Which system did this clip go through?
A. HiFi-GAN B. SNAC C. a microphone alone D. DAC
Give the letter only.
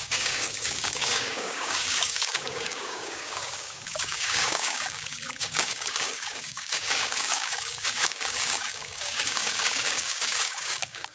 D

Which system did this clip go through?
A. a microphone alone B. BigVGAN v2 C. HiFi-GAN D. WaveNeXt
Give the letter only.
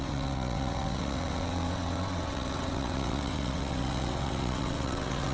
D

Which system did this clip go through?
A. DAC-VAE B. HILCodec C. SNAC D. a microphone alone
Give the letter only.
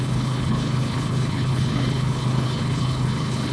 B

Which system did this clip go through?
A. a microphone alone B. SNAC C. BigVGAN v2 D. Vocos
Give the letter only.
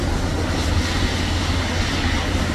A